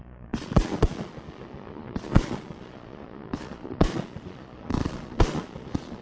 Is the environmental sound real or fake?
fake